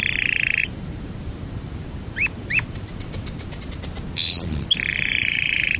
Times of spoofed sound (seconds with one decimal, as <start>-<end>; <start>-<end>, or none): 0.6-3.6; 4.9-5.8